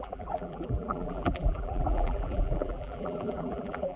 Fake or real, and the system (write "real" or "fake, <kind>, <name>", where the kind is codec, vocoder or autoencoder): fake, vocoder, BigVGAN v2